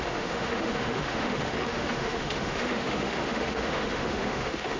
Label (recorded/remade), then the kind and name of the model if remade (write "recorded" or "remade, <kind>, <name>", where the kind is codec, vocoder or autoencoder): remade, autoencoder, DAC-VAE